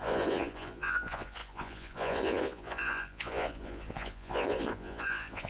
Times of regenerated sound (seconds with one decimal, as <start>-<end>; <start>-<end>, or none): 0.0-5.5